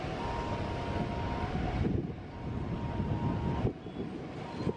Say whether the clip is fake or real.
real